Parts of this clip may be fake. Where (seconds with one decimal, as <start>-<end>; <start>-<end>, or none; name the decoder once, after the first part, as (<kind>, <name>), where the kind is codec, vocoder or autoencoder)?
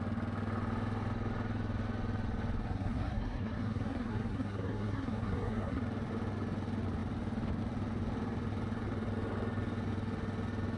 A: 2.6-5.8 (codec, SNAC)